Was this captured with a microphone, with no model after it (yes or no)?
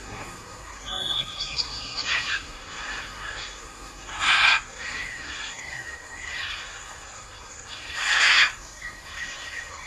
no